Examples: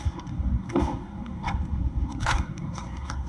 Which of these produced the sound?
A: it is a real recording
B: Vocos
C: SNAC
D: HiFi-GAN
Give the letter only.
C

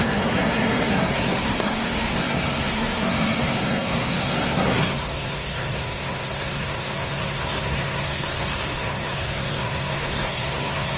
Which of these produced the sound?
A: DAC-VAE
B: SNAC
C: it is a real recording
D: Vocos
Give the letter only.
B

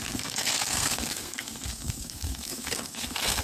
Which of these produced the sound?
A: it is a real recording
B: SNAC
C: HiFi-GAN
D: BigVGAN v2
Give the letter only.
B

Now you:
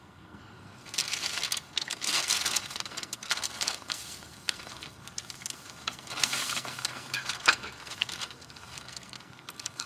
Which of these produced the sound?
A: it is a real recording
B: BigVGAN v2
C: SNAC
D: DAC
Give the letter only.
C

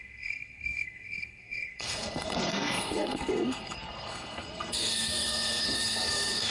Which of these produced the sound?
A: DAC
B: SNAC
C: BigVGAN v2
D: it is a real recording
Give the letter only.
B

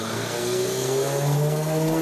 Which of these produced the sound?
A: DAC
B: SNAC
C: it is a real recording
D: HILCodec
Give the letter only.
B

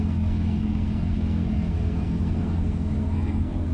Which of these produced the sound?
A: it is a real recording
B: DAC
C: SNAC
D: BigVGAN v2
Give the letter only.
C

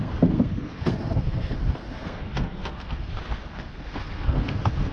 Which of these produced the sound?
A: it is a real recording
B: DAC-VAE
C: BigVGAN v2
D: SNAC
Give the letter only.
D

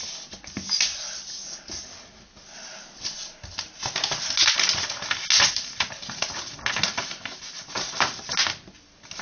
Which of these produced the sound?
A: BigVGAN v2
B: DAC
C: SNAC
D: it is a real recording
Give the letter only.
D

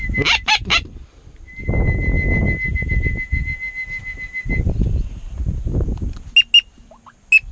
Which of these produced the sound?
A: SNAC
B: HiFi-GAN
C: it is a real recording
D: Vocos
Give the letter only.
C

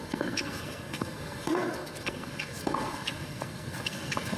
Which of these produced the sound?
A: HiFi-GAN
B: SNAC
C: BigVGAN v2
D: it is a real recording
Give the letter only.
B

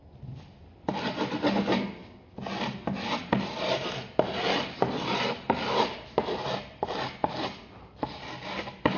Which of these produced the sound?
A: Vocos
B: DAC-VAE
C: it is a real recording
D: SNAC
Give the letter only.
C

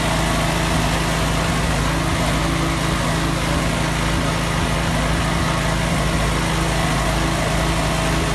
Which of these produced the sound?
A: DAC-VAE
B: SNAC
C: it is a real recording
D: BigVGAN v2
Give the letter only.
C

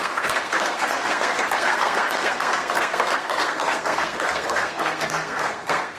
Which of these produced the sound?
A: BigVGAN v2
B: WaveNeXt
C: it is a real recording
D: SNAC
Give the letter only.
D